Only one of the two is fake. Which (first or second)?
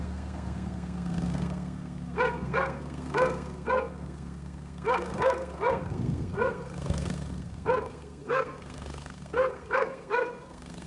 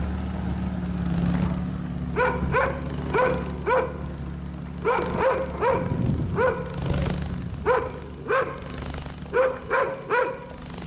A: first